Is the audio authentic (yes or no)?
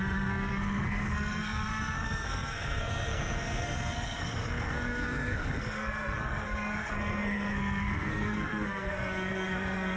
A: no